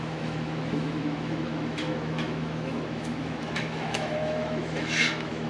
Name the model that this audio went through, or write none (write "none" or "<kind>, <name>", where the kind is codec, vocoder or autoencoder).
autoencoder, DAC-VAE